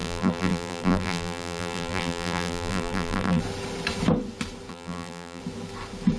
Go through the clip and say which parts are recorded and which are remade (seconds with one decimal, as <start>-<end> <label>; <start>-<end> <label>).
0.0-3.4 remade; 3.4-4.7 recorded; 4.7-5.4 remade; 5.4-6.2 recorded